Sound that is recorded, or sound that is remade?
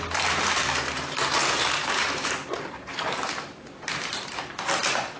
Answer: remade